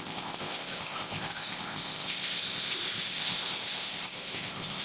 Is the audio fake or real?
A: fake